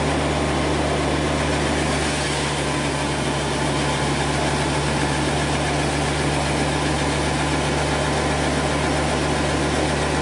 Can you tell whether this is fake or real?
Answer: real